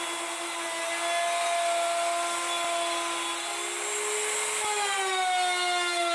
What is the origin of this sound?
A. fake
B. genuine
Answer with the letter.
B